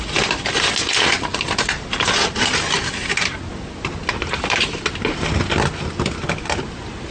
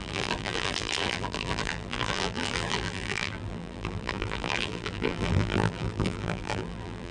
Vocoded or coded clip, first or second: second